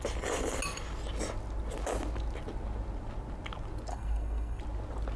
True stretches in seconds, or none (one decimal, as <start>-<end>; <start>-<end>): 0.0-3.9; 4.6-5.2